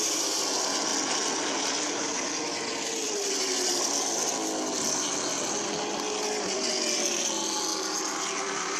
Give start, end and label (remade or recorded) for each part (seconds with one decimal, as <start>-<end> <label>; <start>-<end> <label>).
0.0-8.8 recorded